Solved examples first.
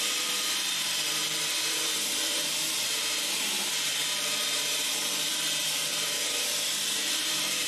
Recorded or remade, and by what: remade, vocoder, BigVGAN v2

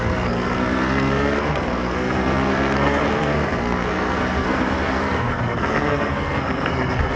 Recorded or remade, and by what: remade, codec, SNAC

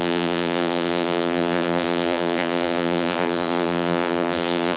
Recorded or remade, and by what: remade, vocoder, BigVGAN v2